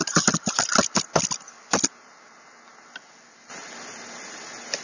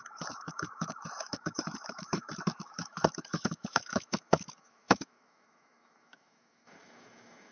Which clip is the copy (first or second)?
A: second